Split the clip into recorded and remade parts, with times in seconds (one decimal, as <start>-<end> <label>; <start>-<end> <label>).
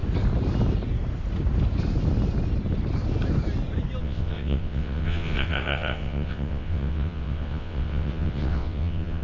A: 0.0-4.0 recorded; 4.0-9.2 remade